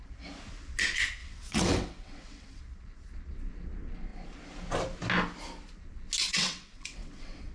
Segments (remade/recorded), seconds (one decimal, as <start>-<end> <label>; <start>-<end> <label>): 0.0-1.2 recorded; 1.2-2.6 remade; 2.6-6.2 recorded; 6.2-7.5 remade